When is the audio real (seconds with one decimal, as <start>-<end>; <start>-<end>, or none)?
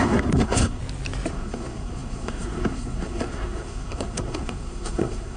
0.8-1.3